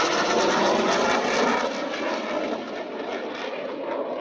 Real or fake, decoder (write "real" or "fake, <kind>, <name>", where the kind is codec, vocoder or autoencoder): real